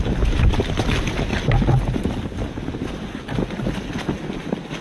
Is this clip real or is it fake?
real